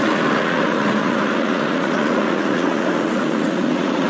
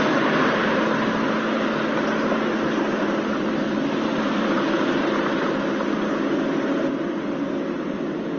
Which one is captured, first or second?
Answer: second